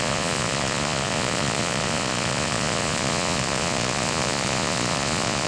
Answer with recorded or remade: remade